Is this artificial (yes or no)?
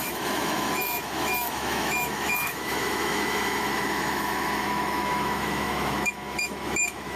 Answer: yes